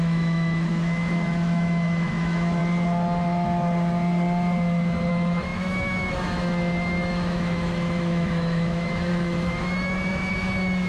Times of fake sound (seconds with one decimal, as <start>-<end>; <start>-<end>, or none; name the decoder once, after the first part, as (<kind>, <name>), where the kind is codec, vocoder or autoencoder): 0.0-2.6 (autoencoder, DAC-VAE); 5.1-10.9